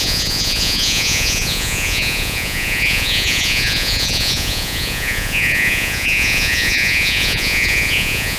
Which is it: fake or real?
fake